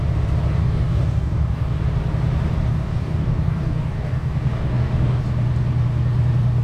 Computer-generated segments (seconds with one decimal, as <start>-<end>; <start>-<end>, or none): 0.6-1.8; 2.7-5.2